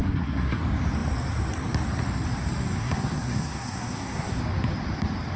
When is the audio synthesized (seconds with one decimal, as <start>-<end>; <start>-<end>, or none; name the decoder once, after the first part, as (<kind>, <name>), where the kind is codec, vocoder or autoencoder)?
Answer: 0.0-0.6 (codec, SNAC); 2.8-4.4